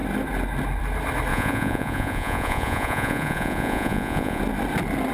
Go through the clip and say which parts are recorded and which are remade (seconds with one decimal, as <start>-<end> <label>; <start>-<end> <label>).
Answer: 0.0-1.3 recorded; 1.3-4.4 remade; 4.4-5.1 recorded